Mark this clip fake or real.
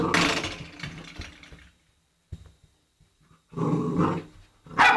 real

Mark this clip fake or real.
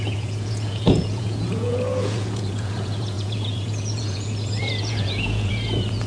fake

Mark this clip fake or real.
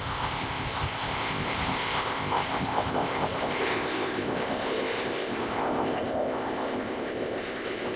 fake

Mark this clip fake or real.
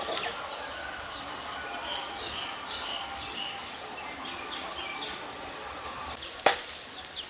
real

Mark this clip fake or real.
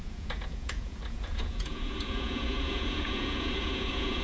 fake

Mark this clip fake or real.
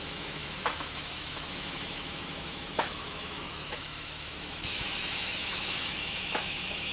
fake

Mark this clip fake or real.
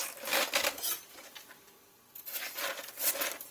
real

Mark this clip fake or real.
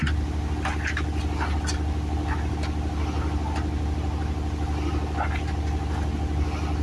real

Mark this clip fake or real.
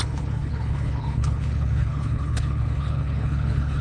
fake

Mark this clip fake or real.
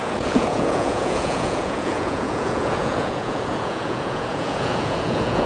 fake